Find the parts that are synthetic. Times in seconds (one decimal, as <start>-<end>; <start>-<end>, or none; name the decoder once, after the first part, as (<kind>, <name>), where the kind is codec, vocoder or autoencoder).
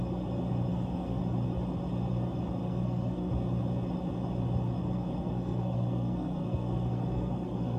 0.7-1.2 (codec, SNAC); 2.6-3.3; 4.8-7.8